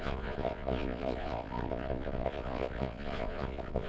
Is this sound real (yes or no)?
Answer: no